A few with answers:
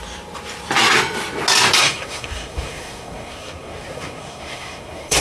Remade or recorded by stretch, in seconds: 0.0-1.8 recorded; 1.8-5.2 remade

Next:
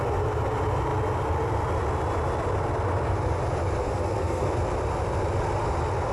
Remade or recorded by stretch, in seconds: 0.0-3.8 recorded; 3.8-4.5 remade; 4.5-6.1 recorded

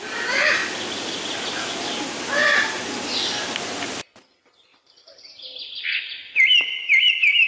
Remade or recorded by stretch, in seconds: 0.0-7.5 recorded

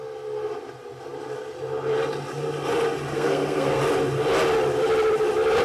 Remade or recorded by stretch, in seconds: 0.0-3.1 recorded; 3.1-3.8 remade; 3.8-5.6 recorded

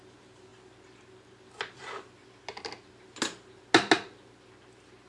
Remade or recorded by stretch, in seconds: 0.0-5.1 recorded

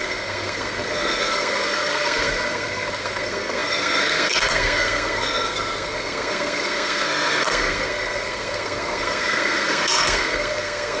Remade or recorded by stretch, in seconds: 0.0-11.0 remade

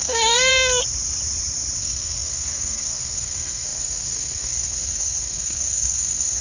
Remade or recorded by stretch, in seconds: 0.0-0.5 remade; 0.5-1.8 recorded; 1.8-6.4 remade

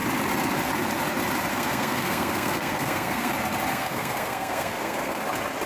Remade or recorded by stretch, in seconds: 0.0-1.5 recorded; 1.5-3.3 remade; 3.3-3.7 recorded; 3.7-5.2 remade; 5.2-5.7 recorded